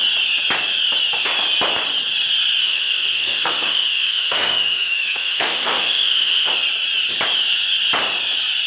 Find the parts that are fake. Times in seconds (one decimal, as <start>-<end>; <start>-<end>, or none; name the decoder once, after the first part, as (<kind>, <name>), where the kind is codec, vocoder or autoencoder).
2.6-6.5 (autoencoder, DAC-VAE)